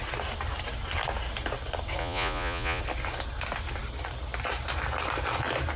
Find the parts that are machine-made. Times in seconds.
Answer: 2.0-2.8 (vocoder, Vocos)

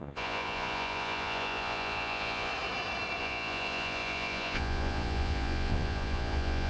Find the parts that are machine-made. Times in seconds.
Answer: 0.0-2.5 (vocoder, Vocos); 3.2-6.7

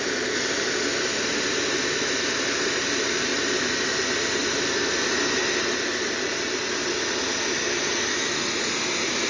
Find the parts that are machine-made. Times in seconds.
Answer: none